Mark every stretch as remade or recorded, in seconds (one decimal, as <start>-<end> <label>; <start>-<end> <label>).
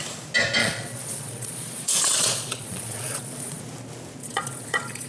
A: 0.0-0.6 recorded; 0.6-3.6 remade; 3.6-4.2 recorded; 4.2-5.1 remade